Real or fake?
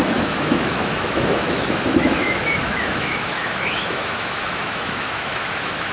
fake